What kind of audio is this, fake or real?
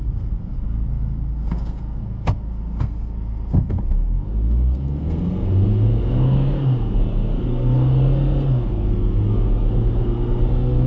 fake